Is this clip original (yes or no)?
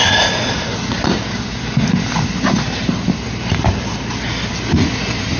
yes